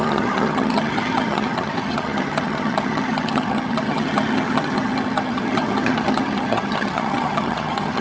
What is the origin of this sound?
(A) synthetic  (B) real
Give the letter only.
A